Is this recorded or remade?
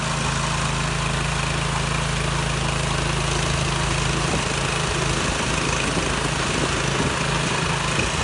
recorded